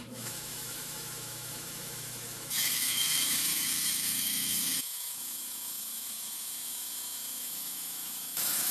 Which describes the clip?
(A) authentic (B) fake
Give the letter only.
B